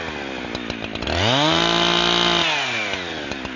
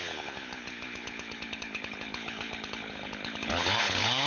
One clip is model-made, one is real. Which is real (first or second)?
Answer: first